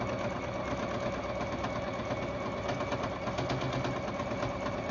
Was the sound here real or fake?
real